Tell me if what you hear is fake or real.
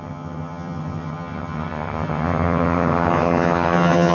fake